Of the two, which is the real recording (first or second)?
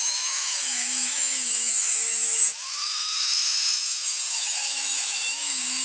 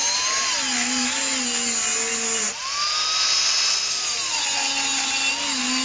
second